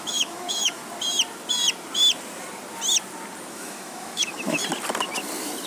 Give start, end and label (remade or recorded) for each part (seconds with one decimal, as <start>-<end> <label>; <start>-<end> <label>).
0.0-0.8 remade; 0.8-3.5 recorded; 3.5-4.6 remade; 4.6-5.7 recorded